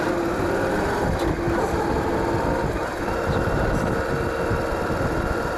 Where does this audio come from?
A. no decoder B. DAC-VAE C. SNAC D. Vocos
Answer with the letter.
A